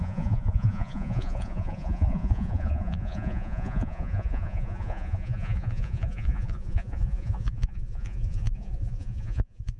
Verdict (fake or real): fake